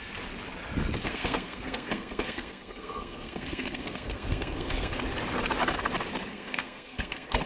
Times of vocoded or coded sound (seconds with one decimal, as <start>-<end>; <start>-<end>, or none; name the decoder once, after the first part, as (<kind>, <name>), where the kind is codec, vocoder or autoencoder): 1.0-5.0 (codec, SNAC); 6.3-7.5